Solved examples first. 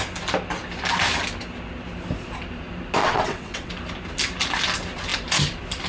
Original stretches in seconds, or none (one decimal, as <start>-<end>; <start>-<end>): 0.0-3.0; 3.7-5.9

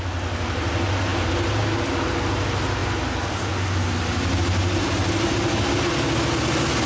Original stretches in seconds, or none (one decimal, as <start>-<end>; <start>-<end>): 0.0-6.9

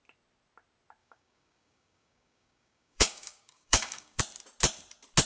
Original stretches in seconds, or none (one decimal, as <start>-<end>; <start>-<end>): 0.0-1.0; 4.2-5.3